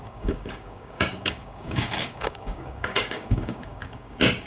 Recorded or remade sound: remade